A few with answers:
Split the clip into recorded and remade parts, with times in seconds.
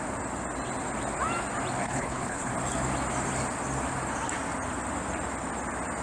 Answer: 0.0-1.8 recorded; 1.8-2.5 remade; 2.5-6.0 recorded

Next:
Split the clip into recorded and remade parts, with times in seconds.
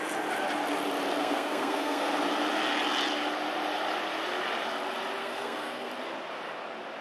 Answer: 0.0-1.2 recorded; 1.2-2.1 remade; 2.1-5.2 recorded; 5.2-5.9 remade; 5.9-7.0 recorded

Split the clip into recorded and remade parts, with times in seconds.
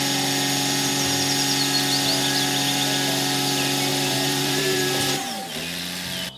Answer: 0.0-3.9 recorded; 3.9-5.4 remade; 5.4-6.4 recorded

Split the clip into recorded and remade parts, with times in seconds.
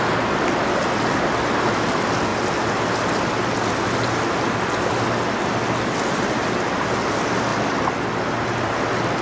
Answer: 0.0-9.2 recorded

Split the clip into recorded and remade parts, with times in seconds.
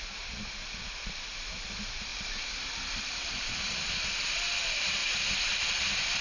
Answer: 0.0-2.1 recorded; 2.1-3.9 remade; 3.9-5.0 recorded; 5.0-5.5 remade; 5.5-6.2 recorded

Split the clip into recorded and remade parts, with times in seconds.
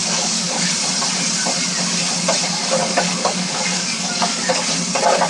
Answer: 0.0-0.7 remade; 0.7-2.8 recorded; 2.8-4.6 remade; 4.6-5.3 recorded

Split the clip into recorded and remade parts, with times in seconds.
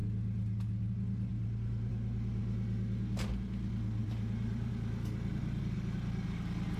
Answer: 0.0-1.3 recorded; 1.3-1.9 remade; 1.9-4.0 recorded; 4.0-4.7 remade; 4.7-6.8 recorded